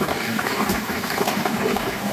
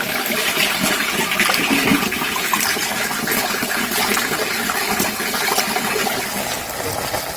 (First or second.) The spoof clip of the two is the first